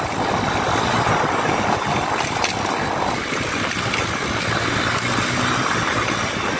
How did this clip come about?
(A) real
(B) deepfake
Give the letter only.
A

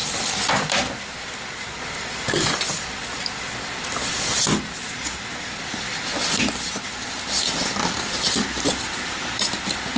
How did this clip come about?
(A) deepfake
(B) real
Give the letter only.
B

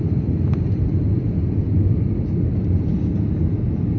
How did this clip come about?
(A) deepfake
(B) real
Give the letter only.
B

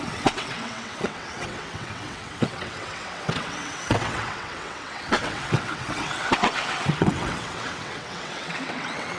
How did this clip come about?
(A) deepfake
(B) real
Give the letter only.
A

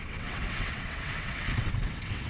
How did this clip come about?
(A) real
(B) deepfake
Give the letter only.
B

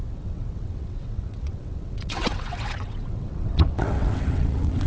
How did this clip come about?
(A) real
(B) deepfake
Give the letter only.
B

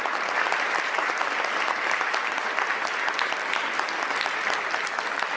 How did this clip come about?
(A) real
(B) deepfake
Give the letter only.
A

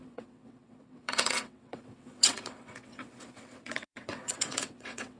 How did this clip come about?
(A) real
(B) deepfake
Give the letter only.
B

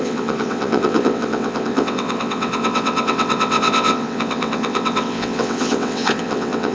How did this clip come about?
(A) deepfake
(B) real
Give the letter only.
A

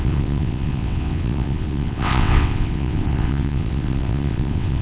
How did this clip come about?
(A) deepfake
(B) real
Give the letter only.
A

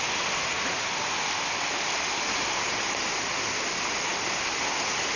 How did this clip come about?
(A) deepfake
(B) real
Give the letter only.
B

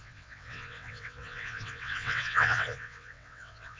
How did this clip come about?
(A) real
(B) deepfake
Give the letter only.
B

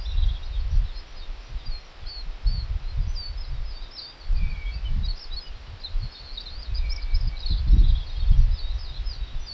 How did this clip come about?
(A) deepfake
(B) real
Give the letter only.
B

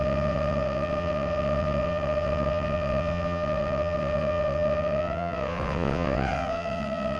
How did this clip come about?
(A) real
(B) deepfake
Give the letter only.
B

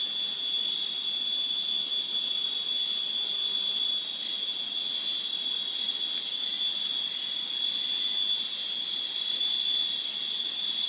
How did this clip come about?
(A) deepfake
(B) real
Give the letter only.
B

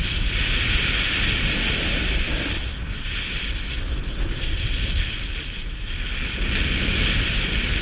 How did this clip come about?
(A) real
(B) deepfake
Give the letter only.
A